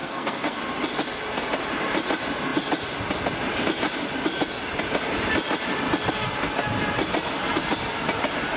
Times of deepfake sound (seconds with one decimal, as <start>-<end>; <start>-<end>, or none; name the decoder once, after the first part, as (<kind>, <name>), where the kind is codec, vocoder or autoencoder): 0.0-0.6 (codec, SNAC)